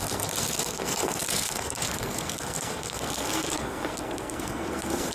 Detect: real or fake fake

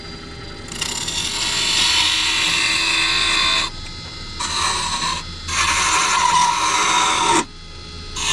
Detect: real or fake real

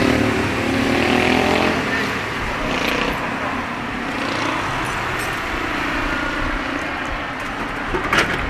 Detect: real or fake real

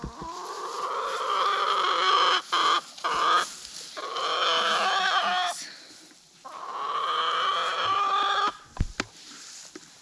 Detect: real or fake real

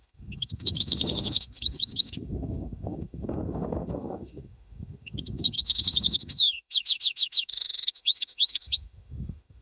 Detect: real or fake fake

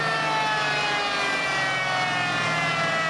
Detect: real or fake real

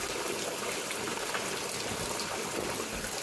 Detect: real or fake real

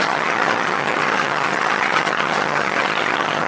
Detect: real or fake fake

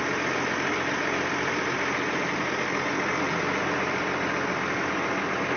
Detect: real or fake real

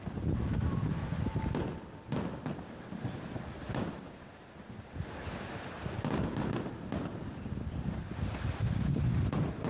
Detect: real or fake real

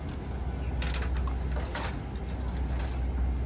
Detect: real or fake real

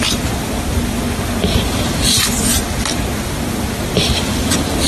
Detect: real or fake real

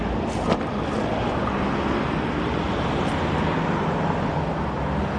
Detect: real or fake real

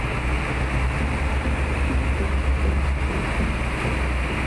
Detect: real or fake real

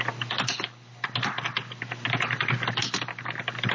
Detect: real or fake real